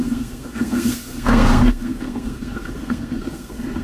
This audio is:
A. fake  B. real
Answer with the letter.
A